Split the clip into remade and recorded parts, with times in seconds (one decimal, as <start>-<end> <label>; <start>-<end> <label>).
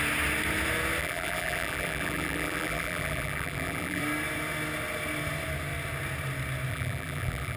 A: 0.0-1.0 recorded; 1.0-4.0 remade; 4.0-6.7 recorded; 6.7-7.6 remade